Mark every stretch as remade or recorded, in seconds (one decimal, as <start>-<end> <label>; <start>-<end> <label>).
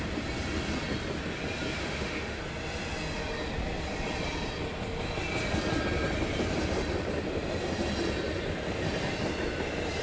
0.0-1.8 recorded; 1.8-2.4 remade; 2.4-10.0 recorded